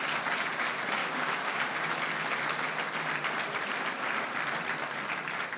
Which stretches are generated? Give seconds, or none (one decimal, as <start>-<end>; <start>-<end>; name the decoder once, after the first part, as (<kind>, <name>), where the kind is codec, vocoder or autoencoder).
1.0-1.9 (codec, DAC)